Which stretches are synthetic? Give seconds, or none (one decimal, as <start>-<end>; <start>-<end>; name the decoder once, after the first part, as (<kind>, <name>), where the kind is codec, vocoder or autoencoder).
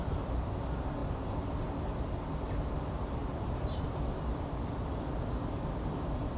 0.0-0.5 (vocoder, BigVGAN v2); 3.2-4.0